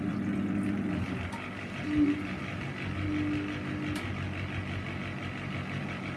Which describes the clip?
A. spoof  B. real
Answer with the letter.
B